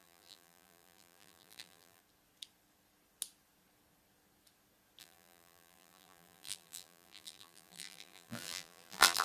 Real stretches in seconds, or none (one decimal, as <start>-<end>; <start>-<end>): 2.0-5.0